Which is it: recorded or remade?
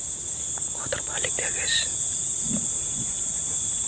recorded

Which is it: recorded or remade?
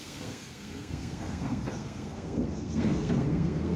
remade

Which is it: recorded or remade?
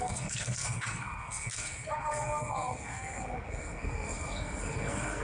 remade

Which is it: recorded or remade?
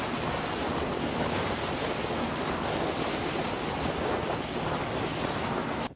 recorded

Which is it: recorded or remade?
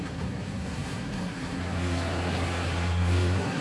remade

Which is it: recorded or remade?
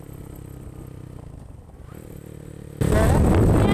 recorded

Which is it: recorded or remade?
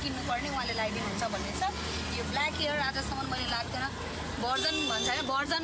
recorded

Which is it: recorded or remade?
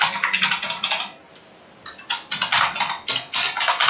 recorded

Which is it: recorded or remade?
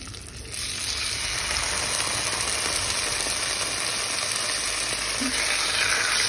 recorded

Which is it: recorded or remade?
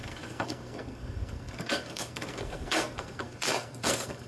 remade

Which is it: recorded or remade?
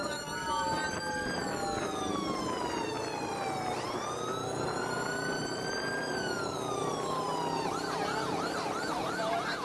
recorded